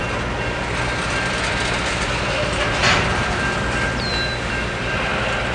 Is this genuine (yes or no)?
yes